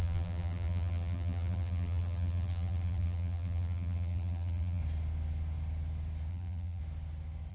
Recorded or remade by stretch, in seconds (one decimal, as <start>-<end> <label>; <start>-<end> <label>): 0.0-4.8 remade; 4.8-6.3 recorded; 6.3-6.8 remade; 6.8-7.5 recorded